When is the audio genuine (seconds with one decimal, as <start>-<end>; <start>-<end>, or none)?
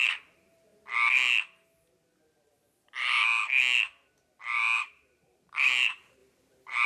0.7-4.8; 6.2-6.9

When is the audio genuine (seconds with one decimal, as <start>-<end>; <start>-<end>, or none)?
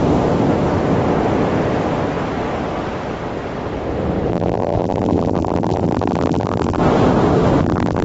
0.0-4.3; 6.8-7.6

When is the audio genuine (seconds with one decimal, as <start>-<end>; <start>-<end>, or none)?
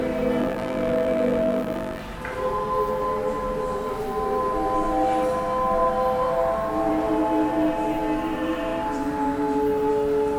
0.0-0.4; 2.0-10.4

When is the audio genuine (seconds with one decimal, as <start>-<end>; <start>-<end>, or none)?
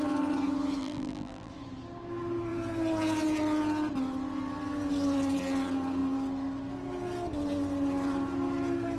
0.0-0.8; 1.5-9.0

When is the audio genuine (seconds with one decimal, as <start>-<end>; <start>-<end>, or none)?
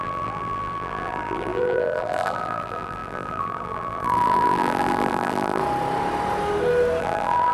5.6-7.0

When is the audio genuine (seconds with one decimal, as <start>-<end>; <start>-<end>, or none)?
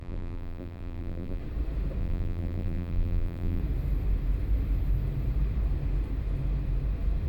1.4-2.0; 3.6-7.3